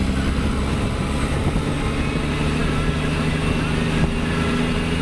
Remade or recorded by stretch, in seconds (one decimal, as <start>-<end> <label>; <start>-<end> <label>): 0.0-5.0 recorded